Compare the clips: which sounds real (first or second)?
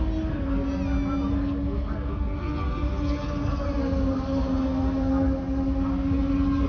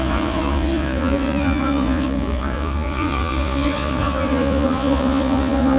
first